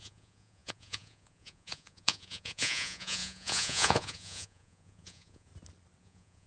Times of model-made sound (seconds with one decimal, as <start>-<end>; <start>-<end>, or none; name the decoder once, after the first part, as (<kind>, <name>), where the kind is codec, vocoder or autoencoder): 0.0-5.5 (vocoder, Vocos); 6.0-6.5